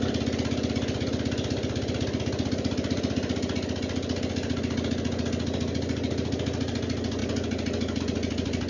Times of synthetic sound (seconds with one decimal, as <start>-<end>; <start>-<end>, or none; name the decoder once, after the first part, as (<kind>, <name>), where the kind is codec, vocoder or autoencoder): none